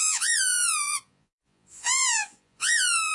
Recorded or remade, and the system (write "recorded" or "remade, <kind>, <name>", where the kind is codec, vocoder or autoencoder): remade, vocoder, Vocos